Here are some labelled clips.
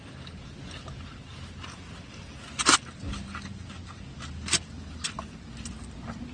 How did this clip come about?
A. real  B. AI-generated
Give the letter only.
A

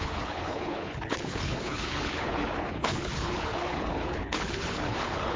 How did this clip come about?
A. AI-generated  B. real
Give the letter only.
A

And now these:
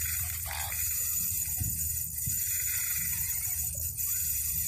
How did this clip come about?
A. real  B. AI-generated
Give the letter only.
B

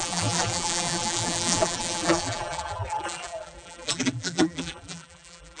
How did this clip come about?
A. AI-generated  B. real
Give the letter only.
A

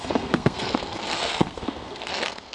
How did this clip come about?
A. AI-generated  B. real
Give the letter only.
A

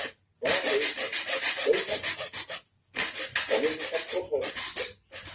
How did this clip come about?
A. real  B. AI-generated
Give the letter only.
A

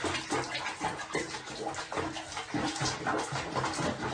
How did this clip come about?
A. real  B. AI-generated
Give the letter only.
A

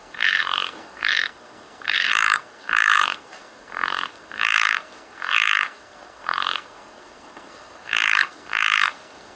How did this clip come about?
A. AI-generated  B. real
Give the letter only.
A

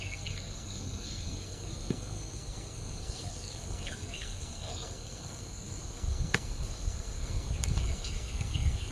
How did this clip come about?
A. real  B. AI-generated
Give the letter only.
B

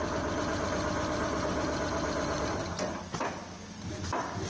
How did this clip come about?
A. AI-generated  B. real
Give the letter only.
B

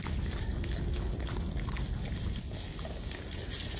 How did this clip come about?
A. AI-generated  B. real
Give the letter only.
B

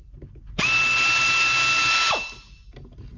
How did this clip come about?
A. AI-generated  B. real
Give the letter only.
B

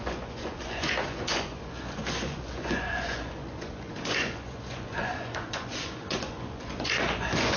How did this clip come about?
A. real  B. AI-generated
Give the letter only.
B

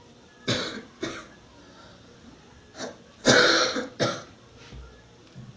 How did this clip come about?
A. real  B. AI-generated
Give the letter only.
A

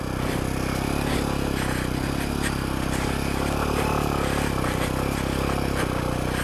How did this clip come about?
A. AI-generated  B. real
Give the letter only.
B